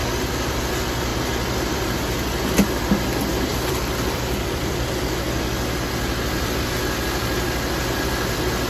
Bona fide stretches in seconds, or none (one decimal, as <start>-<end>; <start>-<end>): 0.0-3.5; 4.9-8.7

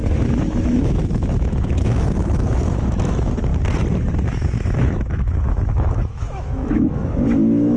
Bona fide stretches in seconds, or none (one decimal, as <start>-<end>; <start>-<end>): 3.5-4.3

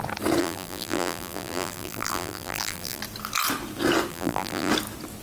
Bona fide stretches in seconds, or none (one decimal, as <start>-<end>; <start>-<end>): 0.0-0.4; 3.0-4.1; 4.7-5.2

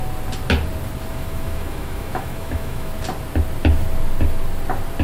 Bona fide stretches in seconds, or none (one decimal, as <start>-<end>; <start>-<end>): 0.0-1.1; 2.9-5.0

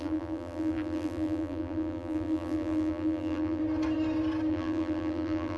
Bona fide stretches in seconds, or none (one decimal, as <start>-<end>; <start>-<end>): 3.6-4.5